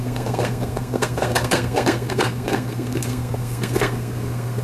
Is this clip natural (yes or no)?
no